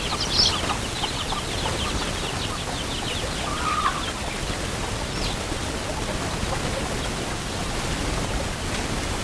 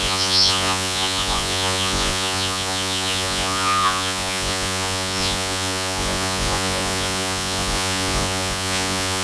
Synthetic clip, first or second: second